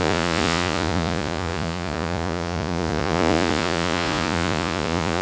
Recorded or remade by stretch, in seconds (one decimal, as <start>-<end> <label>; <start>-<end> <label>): 0.0-5.2 remade